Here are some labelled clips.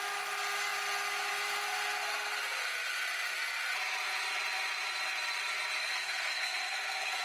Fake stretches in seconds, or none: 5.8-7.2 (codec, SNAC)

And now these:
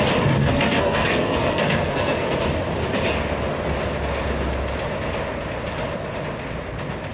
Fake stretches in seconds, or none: 0.4-2.4 (codec, SNAC)

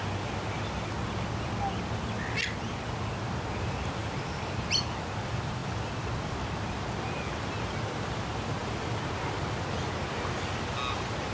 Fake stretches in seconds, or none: 5.6-6.1 (vocoder, BigVGAN v2)

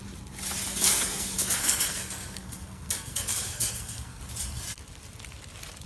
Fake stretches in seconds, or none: 0.7-4.2 (codec, SNAC)

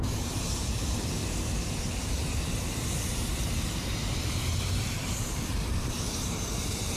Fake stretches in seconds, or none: 0.0-1.2 (vocoder, BigVGAN v2); 2.0-7.0

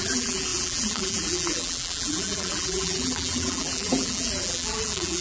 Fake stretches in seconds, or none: 0.0-5.2 (vocoder, BigVGAN v2)